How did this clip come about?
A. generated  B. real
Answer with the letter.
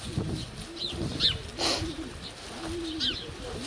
B